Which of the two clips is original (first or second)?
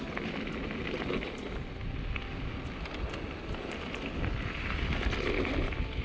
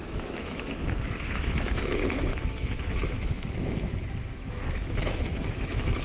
first